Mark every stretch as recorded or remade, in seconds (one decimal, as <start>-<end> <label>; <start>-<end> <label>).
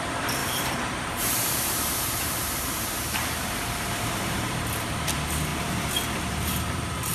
0.0-5.5 remade; 5.5-6.2 recorded; 6.2-7.1 remade